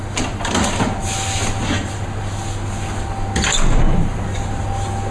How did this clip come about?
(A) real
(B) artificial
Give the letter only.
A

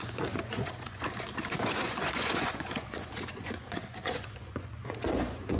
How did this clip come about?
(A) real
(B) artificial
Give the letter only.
B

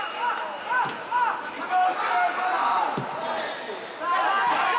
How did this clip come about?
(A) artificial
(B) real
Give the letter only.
B